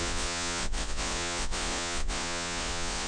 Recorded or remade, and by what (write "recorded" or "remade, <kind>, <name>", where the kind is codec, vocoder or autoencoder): remade, vocoder, Vocos